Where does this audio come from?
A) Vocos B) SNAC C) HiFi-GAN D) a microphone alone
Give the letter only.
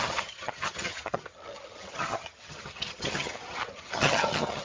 C